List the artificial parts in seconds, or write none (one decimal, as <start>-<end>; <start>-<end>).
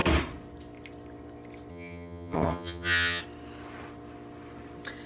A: 1.7-3.2